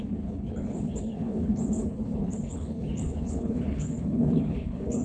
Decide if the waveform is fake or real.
fake